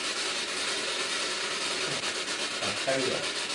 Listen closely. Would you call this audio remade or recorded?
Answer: remade